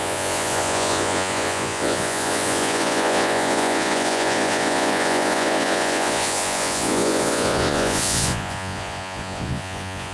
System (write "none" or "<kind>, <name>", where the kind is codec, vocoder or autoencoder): vocoder, Vocos